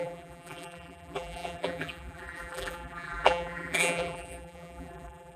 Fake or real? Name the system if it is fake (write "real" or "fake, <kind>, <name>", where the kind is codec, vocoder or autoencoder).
fake, vocoder, BigVGAN v2